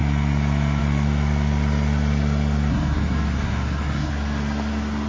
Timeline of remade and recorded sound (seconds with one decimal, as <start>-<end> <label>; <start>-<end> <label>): 0.0-2.7 recorded; 2.7-4.1 remade; 4.1-5.1 recorded